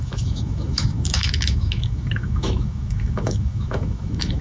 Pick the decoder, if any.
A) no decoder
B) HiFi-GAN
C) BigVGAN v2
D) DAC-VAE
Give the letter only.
D